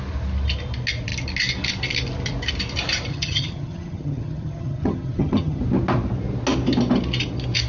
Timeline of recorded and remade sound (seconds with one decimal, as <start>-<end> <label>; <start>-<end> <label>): 0.0-3.1 recorded; 3.1-5.6 remade; 5.6-7.7 recorded